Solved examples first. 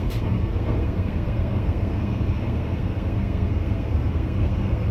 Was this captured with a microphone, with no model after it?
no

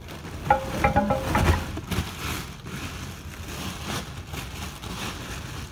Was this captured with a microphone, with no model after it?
yes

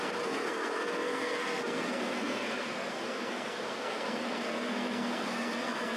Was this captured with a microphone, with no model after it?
no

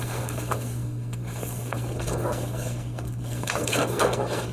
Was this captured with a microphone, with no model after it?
no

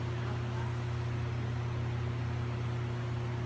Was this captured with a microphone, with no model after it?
yes